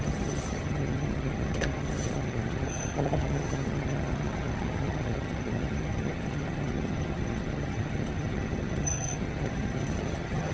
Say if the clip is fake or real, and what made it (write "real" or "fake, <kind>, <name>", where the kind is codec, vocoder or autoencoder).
fake, vocoder, HiFi-GAN